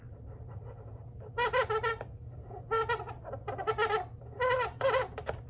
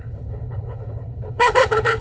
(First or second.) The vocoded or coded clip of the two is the second